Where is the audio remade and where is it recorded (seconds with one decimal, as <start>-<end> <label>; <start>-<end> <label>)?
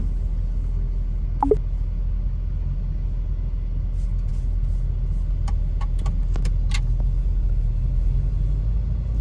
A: 0.0-9.2 recorded